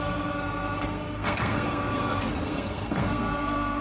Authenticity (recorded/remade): remade